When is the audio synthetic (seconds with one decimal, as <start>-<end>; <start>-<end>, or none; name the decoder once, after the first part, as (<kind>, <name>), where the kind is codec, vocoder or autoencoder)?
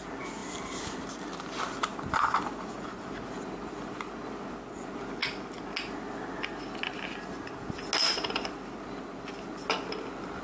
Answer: none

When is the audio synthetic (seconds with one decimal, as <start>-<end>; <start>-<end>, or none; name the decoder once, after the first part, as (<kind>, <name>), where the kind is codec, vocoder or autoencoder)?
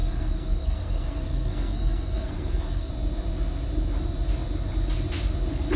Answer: 0.0-2.9 (codec, SNAC)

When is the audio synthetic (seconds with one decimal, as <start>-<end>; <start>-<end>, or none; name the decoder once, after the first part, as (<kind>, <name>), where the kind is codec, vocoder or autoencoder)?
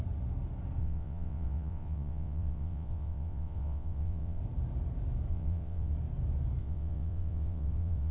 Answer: 0.8-4.4 (vocoder, WaveNeXt); 5.3-5.9; 6.6-8.1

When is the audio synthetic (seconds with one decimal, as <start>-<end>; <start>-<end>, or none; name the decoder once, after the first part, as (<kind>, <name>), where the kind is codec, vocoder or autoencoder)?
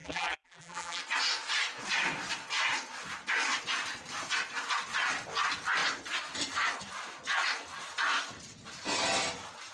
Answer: 0.0-1.0 (vocoder, BigVGAN v2)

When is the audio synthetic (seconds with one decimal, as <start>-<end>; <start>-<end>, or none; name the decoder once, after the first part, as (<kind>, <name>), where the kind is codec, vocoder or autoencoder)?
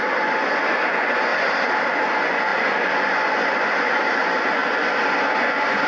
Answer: 0.0-1.3 (vocoder, Vocos); 2.0-5.9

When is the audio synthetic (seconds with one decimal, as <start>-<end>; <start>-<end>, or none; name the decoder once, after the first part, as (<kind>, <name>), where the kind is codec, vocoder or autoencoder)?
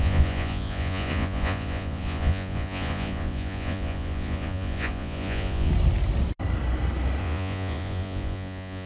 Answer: 0.0-5.7 (vocoder, Vocos); 7.2-8.9